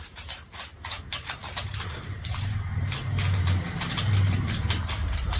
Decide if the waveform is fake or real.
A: fake